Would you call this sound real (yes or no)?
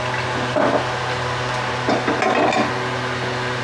yes